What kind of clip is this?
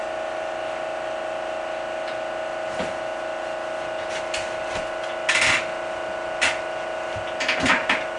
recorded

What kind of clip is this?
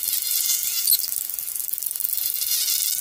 recorded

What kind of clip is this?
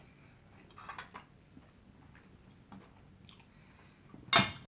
recorded